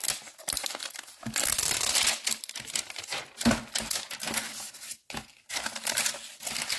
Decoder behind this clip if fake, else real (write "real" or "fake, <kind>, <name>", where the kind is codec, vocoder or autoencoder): real